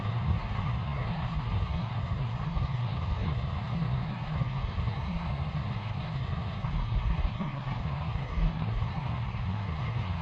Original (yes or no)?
no